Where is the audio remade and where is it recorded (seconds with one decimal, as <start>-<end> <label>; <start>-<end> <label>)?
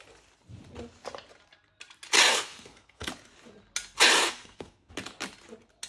0.0-2.3 recorded; 2.3-3.1 remade; 3.1-4.2 recorded; 4.2-4.9 remade; 4.9-5.9 recorded